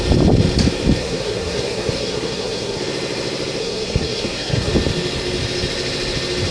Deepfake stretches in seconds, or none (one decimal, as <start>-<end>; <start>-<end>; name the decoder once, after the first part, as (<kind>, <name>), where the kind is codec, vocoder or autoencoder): 1.0-2.8 (codec, SNAC); 3.6-4.7